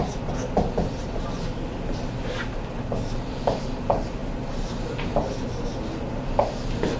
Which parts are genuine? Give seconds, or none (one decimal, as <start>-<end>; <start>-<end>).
0.0-7.0